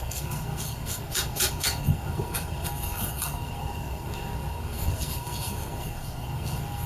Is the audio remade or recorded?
remade